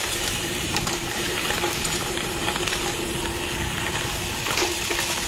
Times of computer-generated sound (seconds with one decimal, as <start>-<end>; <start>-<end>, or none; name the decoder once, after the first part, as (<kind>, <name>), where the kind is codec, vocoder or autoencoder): 0.0-3.0 (vocoder, BigVGAN v2)

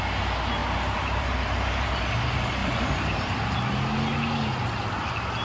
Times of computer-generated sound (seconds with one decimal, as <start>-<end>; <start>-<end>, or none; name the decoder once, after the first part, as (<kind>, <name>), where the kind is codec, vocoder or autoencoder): 0.6-2.0 (vocoder, BigVGAN v2); 2.6-3.8

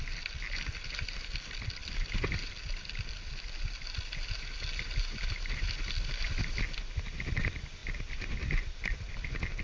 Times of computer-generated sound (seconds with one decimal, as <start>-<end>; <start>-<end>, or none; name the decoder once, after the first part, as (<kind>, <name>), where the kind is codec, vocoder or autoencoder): 1.8-2.5 (vocoder, BigVGAN v2); 7.8-9.1

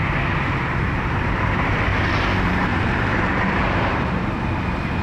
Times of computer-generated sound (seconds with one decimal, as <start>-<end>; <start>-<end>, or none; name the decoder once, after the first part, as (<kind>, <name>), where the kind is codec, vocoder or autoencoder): 1.9-3.6 (vocoder, BigVGAN v2)

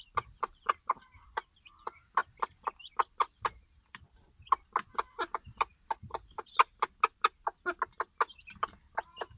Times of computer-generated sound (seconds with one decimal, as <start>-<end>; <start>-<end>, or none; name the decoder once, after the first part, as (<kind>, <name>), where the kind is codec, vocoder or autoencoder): 0.0-5.7 (vocoder, BigVGAN v2); 8.0-9.4

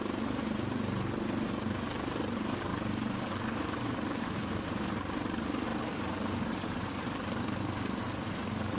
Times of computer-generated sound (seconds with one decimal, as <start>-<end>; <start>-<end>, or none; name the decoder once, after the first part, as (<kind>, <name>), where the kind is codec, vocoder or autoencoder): 0.0-2.7 (vocoder, BigVGAN v2); 3.3-8.8

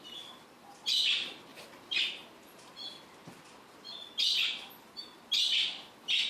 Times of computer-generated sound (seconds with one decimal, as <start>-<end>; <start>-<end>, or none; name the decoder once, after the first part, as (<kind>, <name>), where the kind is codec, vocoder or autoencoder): 1.5-2.0 (vocoder, BigVGAN v2)

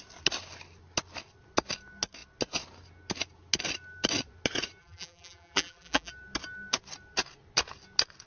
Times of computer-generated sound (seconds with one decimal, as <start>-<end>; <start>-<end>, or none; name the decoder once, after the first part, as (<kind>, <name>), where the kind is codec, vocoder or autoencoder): 4.8-6.1 (vocoder, BigVGAN v2)